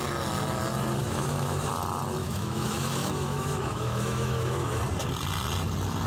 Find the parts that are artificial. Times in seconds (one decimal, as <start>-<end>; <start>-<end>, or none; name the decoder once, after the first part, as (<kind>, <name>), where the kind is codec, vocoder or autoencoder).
1.0-1.7 (autoencoder, DAC-VAE); 2.2-4.8